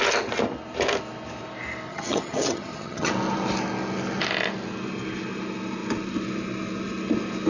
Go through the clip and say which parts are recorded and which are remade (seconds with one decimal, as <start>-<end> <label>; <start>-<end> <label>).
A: 0.0-1.9 recorded; 1.9-3.1 remade; 3.1-7.5 recorded